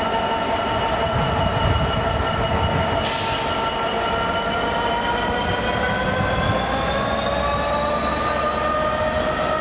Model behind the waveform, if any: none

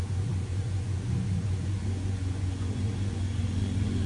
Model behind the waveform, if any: vocoder, Vocos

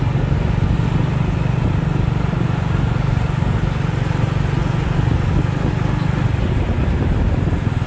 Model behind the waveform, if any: none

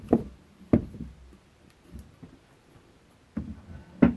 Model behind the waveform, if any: none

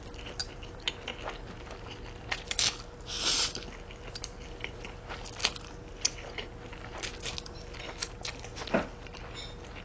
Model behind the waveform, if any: none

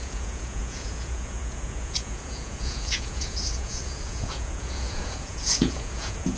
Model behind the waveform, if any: vocoder, Vocos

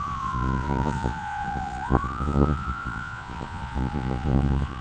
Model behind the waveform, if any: vocoder, Vocos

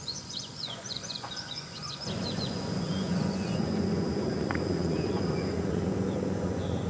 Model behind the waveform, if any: vocoder, Vocos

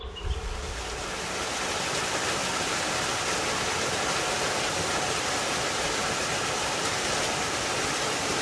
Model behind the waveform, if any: none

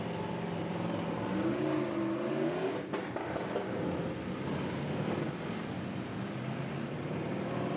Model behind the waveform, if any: none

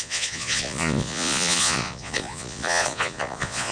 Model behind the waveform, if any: vocoder, Vocos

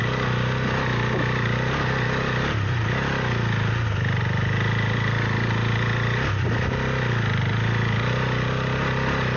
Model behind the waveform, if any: none